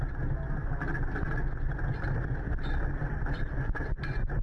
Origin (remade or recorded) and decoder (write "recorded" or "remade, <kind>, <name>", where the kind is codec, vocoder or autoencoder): recorded